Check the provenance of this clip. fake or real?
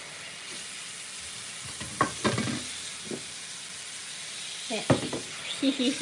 real